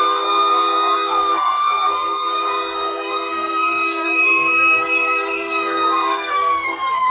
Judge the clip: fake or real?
fake